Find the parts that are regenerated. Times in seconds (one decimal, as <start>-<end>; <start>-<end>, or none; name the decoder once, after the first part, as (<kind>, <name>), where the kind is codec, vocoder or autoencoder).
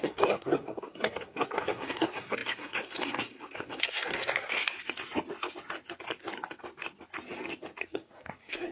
0.0-4.6 (codec, SNAC); 7.8-8.7